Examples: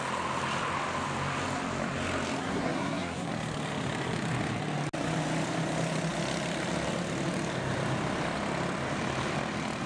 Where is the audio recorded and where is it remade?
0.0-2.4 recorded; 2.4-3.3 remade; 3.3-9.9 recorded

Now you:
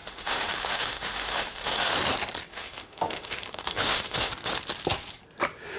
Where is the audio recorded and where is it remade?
0.0-1.9 remade; 1.9-2.5 recorded; 2.5-4.3 remade; 4.3-5.8 recorded

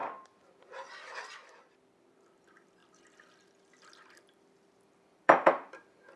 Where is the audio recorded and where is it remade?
0.0-2.2 remade; 2.2-2.8 recorded; 2.8-6.2 remade

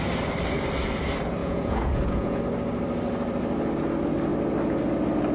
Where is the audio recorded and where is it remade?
0.0-1.4 recorded; 1.4-2.4 remade; 2.4-5.3 recorded

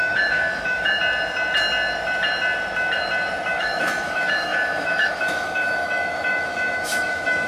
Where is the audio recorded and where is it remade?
0.0-1.0 remade; 1.0-3.5 recorded; 3.5-7.5 remade

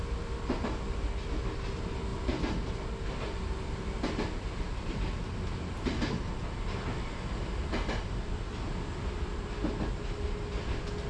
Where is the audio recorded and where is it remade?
0.0-11.1 recorded

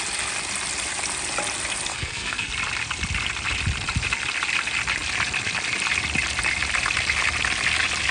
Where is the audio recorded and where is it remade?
0.0-1.9 recorded; 1.9-2.5 remade; 2.5-8.1 recorded